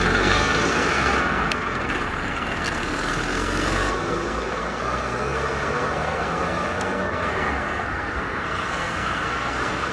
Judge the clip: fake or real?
fake